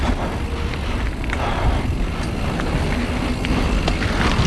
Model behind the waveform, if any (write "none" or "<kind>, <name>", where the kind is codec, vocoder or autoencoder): none